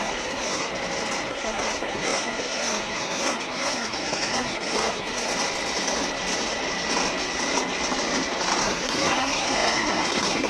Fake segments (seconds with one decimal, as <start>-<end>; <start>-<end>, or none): 0.0-0.7; 1.3-5.3; 8.6-10.5